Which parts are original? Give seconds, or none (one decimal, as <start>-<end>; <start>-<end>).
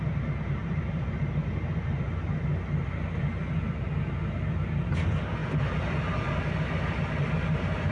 0.0-7.9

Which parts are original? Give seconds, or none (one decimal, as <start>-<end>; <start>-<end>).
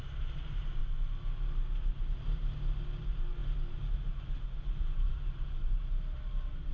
0.8-1.9; 2.4-3.0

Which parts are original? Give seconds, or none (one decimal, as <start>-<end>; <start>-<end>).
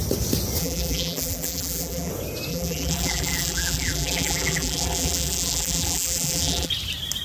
0.0-0.6; 2.1-2.5; 6.7-7.2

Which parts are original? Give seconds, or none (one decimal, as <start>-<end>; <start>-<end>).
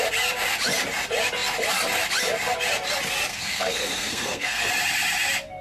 0.0-3.3; 4.7-5.6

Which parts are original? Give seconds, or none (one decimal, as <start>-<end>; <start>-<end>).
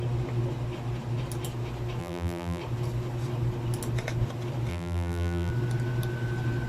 0.0-2.0; 2.6-4.7; 5.5-6.7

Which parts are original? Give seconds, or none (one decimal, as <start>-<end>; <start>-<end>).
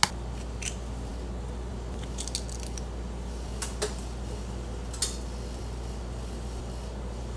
0.0-7.4